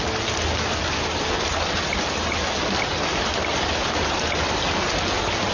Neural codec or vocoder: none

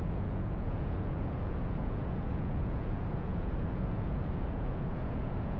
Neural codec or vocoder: vocoder, Vocos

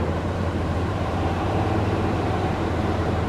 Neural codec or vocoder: vocoder, BigVGAN v2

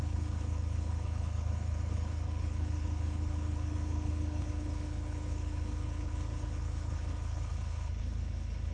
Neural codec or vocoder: codec, HILCodec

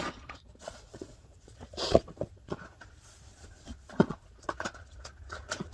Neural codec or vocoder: vocoder, Vocos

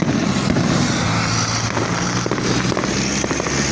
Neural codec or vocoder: none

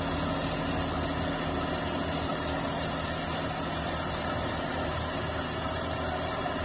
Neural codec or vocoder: none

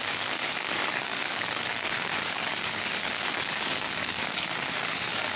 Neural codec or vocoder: codec, DAC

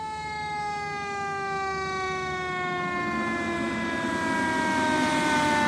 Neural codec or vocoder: none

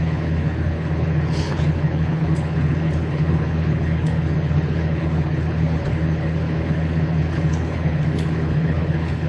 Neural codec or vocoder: codec, HILCodec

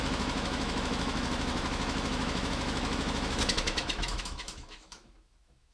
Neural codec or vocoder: autoencoder, DAC-VAE